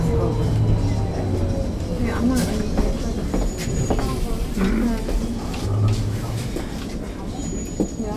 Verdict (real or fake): real